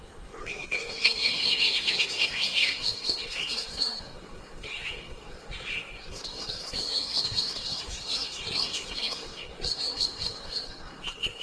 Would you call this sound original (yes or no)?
no